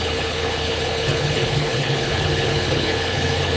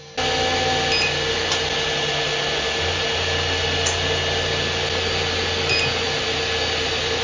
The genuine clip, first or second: second